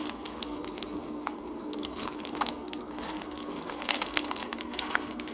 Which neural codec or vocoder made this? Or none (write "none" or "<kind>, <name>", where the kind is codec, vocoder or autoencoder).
codec, SNAC